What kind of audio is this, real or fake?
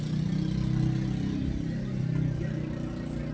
real